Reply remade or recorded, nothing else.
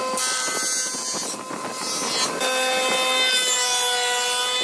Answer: recorded